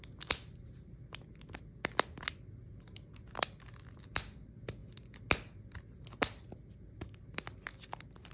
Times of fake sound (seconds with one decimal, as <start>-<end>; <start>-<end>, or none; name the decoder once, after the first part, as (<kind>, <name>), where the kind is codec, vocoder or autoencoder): none